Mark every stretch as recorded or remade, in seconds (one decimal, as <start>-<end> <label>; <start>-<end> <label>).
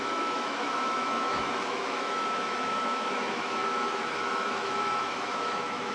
0.0-5.9 remade